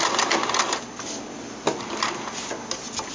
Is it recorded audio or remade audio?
recorded